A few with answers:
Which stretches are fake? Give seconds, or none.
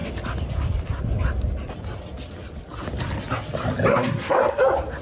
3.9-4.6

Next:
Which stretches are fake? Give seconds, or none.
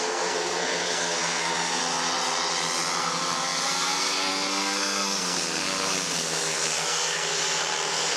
0.0-1.8; 3.0-8.2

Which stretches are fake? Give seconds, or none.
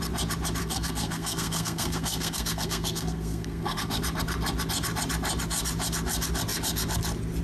0.6-4.0